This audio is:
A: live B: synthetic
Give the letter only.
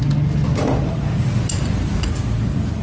A